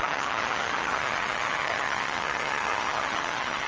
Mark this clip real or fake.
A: fake